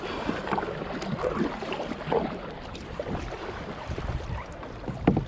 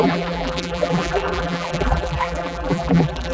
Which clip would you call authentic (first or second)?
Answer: first